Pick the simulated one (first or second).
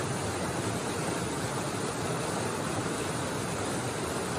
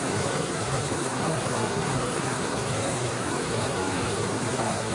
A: second